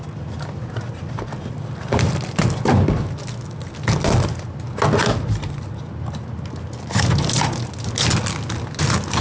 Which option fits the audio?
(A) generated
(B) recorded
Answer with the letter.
B